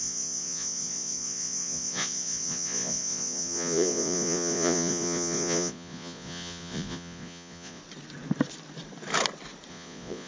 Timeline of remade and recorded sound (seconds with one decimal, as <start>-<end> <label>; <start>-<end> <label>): 0.0-7.8 remade; 7.8-9.7 recorded; 9.7-10.3 remade